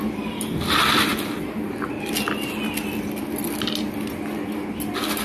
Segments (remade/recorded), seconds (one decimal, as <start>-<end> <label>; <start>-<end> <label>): 0.0-5.2 recorded